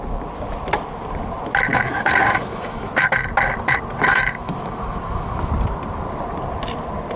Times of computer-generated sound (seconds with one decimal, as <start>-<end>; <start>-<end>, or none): 1.7-2.9; 4.1-5.5